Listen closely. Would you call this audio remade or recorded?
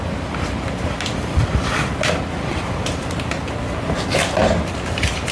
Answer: remade